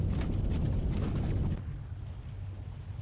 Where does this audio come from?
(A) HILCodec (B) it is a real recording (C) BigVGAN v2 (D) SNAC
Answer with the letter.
B